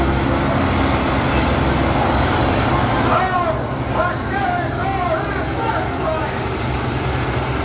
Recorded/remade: recorded